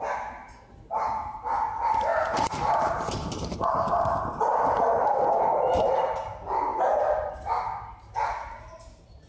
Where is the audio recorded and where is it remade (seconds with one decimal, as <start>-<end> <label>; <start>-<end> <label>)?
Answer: 0.0-2.1 recorded; 2.1-4.6 remade; 4.6-6.7 recorded; 6.7-7.3 remade; 7.3-9.3 recorded